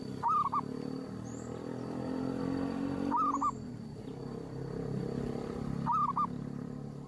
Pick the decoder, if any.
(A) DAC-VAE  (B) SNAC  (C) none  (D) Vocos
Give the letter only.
C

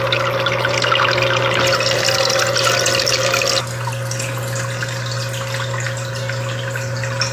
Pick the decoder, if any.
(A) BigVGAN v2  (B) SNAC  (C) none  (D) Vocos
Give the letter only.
C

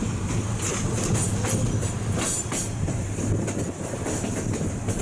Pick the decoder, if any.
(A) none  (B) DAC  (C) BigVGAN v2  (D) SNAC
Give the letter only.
A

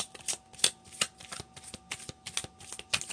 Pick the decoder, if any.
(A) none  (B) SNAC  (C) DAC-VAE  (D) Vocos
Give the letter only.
A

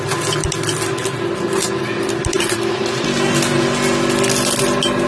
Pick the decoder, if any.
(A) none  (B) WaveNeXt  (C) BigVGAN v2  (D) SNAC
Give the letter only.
A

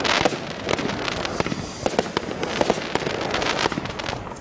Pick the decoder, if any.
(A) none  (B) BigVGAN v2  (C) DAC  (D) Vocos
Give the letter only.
A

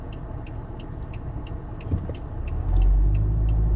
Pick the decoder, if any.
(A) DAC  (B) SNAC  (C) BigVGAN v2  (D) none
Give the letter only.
D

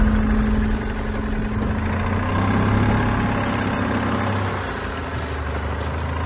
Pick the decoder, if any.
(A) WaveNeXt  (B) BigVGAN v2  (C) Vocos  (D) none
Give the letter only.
D